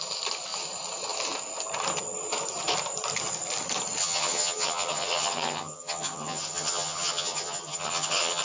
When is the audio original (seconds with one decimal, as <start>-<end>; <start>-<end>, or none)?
0.0-4.0

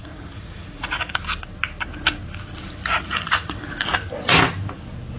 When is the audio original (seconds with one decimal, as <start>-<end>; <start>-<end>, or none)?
1.1-2.8; 3.6-5.2